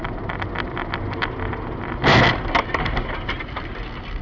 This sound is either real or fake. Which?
real